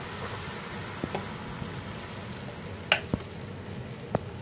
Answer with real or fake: real